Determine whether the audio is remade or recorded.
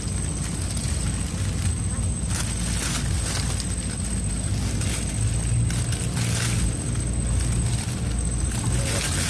recorded